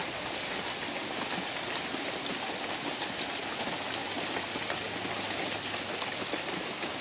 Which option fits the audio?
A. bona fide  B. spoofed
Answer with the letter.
A